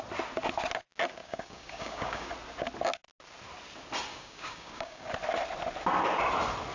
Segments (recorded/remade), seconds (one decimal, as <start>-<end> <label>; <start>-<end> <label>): 0.0-1.2 recorded; 1.2-2.3 remade; 2.3-4.1 recorded; 4.1-5.1 remade; 5.1-6.7 recorded

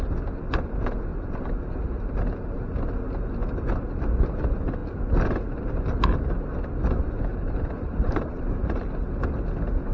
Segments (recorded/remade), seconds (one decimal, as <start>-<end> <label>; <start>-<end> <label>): 0.0-1.1 recorded; 1.1-1.6 remade; 1.6-7.3 recorded; 7.3-8.4 remade; 8.4-9.9 recorded